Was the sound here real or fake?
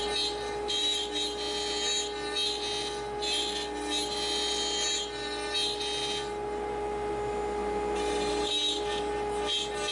real